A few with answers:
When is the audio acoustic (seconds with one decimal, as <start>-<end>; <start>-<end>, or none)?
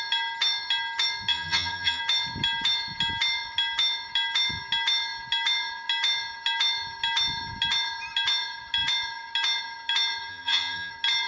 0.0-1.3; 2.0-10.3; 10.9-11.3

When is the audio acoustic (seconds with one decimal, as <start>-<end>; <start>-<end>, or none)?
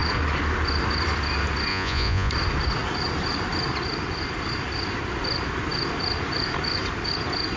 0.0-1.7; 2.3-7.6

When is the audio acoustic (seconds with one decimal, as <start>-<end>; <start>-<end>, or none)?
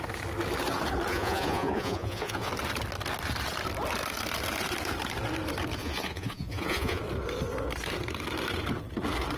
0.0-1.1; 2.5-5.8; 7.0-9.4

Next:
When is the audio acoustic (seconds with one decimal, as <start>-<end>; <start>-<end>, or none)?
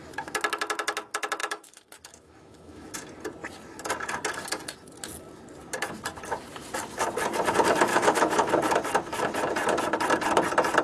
0.0-1.4; 2.9-7.9; 8.5-10.8